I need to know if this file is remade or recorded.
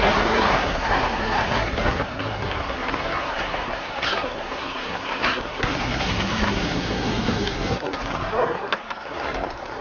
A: remade